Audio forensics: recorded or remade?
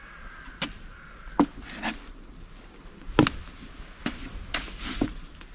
recorded